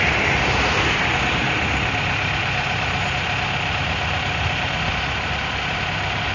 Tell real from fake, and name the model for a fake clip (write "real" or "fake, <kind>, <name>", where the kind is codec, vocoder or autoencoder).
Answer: real